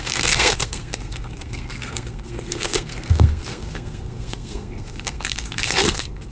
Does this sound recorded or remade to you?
remade